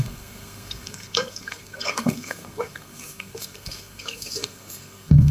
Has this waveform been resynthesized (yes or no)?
yes